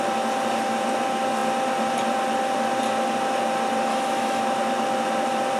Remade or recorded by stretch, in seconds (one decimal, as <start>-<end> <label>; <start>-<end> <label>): 0.0-3.9 recorded; 3.9-4.4 remade; 4.4-5.6 recorded